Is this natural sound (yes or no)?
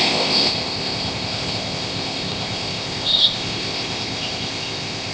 no